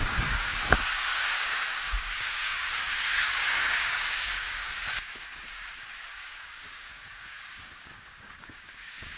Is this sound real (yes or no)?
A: no